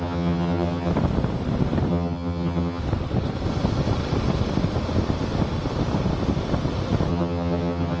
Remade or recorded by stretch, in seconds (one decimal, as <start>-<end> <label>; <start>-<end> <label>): 0.0-0.9 remade; 0.9-1.9 recorded; 1.9-2.8 remade; 2.8-7.1 recorded; 7.1-8.0 remade